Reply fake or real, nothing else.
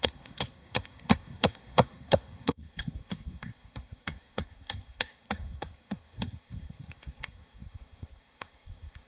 fake